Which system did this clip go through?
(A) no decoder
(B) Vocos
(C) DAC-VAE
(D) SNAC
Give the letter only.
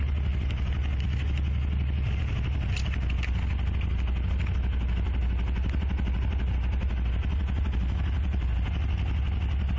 A